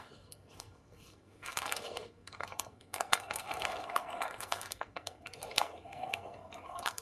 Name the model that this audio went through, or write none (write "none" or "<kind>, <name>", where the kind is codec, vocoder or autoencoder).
codec, SNAC